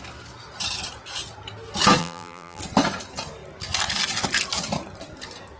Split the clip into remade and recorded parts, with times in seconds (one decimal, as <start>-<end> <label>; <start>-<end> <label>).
0.0-2.0 recorded; 2.0-2.6 remade; 2.6-5.6 recorded